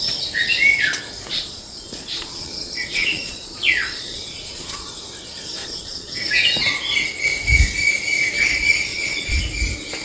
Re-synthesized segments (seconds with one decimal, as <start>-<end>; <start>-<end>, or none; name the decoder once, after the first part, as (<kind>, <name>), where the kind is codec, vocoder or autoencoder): 1.3-4.9 (vocoder, Vocos); 5.6-6.1; 8.9-9.4